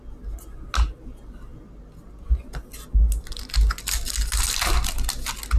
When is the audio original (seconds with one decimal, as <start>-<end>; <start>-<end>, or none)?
0.0-5.6